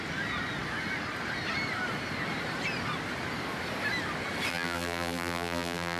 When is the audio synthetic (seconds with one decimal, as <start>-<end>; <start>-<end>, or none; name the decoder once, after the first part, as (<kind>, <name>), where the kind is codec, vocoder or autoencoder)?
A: 4.5-6.0 (vocoder, BigVGAN v2)